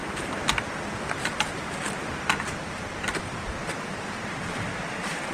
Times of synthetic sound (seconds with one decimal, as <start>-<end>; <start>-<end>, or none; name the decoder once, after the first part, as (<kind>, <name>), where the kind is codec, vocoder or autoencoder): 3.2-3.6 (vocoder, BigVGAN v2); 4.3-5.3